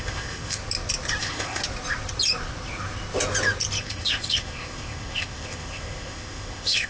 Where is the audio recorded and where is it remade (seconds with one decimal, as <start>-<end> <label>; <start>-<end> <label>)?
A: 0.0-0.6 remade; 0.6-1.2 recorded; 1.2-1.6 remade; 1.6-3.8 recorded; 3.8-6.9 remade